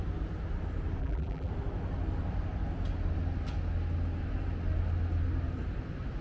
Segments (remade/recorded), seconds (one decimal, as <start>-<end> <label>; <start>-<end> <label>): 0.0-1.0 recorded; 1.0-1.5 remade; 1.5-6.2 recorded